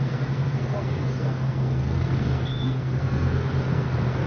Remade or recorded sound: remade